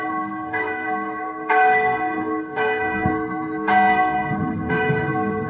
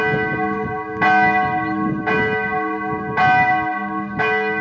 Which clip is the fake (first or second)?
first